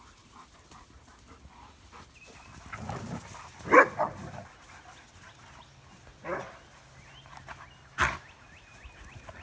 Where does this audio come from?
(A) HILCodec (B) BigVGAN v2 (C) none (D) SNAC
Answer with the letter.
C